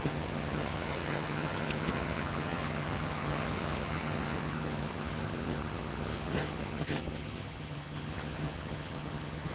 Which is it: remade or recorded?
remade